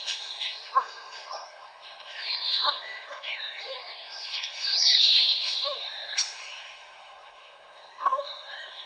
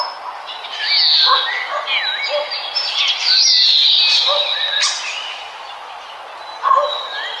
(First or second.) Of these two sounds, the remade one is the first